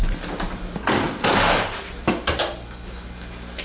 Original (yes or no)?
yes